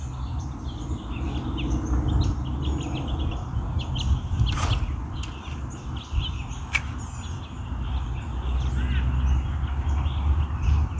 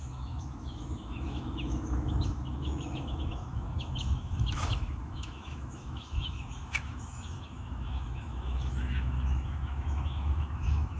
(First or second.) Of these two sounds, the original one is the first